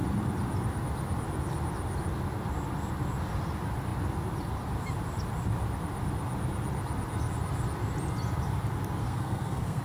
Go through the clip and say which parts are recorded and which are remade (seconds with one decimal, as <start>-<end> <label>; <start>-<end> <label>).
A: 0.0-9.0 recorded; 9.0-9.8 remade